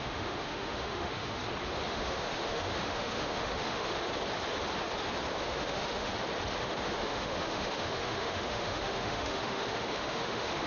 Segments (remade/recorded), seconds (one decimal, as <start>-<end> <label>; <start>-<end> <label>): 0.0-1.4 remade; 1.4-1.9 recorded; 1.9-4.1 remade; 4.1-5.4 recorded; 5.4-6.1 remade; 6.1-6.6 recorded; 6.6-10.7 remade